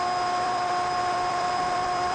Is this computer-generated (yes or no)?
yes